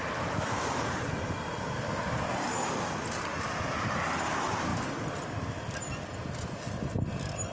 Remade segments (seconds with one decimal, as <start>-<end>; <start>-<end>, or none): none